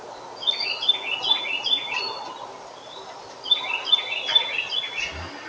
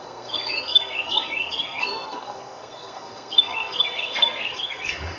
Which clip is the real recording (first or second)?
first